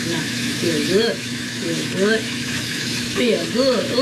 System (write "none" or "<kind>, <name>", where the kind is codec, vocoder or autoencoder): autoencoder, DAC-VAE